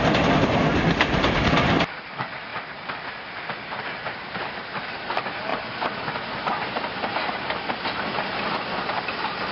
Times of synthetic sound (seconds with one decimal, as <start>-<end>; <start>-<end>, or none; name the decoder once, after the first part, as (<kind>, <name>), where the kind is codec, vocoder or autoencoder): none